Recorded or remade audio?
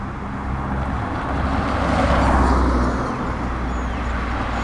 recorded